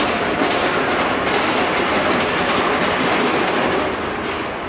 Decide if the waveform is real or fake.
real